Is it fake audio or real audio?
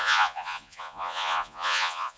fake